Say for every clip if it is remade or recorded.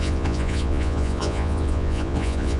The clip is remade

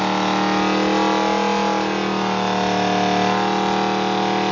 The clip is recorded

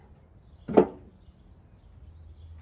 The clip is recorded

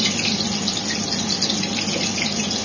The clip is recorded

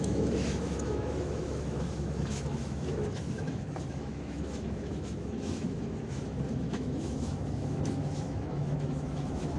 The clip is remade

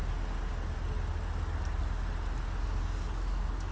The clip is recorded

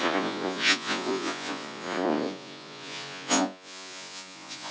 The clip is remade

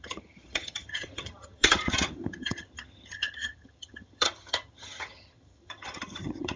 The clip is remade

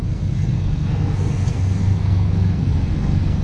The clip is remade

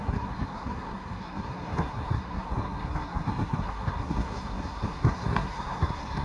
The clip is remade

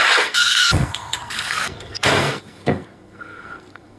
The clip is remade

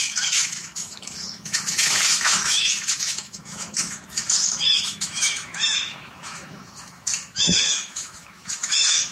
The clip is remade